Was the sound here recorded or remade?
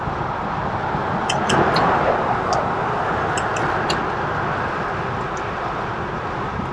recorded